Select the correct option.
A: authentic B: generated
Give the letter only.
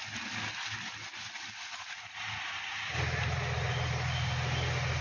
A